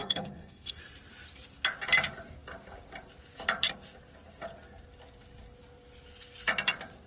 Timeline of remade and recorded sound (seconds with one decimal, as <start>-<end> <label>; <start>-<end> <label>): 0.0-0.8 remade; 0.8-7.1 recorded